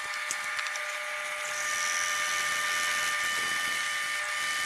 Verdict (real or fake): real